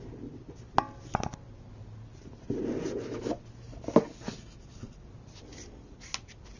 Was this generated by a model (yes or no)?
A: no